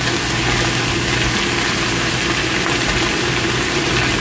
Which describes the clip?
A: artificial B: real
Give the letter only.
B